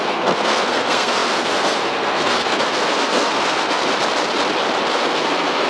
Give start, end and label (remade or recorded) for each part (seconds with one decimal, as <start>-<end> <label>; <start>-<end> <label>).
0.0-3.8 remade; 3.8-4.9 recorded; 4.9-5.7 remade